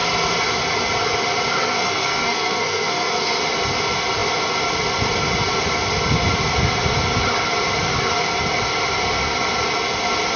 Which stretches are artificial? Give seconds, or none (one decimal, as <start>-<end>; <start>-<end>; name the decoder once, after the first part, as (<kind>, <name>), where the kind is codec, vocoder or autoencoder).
1.6-3.4 (codec, SNAC)